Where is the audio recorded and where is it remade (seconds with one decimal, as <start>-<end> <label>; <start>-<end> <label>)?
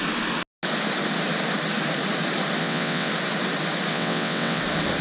0.0-2.6 recorded; 2.6-3.1 remade; 3.1-3.9 recorded; 3.9-4.6 remade; 4.6-5.0 recorded